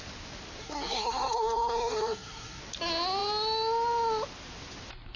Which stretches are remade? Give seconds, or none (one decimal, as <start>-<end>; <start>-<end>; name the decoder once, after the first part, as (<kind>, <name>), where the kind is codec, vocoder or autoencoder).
0.6-2.6 (codec, SNAC)